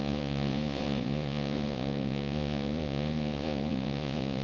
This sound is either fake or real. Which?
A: fake